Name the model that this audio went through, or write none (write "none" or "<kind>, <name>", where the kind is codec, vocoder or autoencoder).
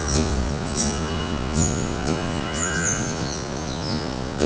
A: vocoder, Vocos